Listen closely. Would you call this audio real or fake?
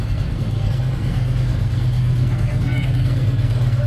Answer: fake